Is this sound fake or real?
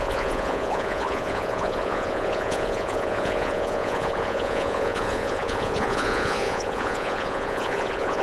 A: fake